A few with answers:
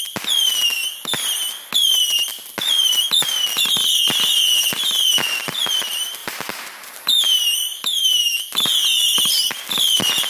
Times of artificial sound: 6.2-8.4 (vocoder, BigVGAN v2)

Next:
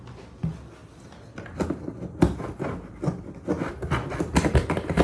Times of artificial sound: none

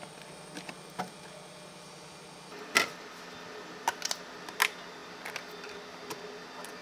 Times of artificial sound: none